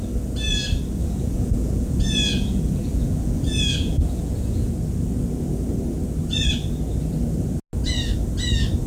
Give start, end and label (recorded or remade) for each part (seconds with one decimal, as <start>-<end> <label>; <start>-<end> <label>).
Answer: 0.0-1.0 recorded; 1.0-4.7 remade; 4.7-8.9 recorded